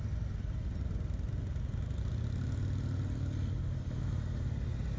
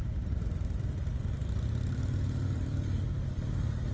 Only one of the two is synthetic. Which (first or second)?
second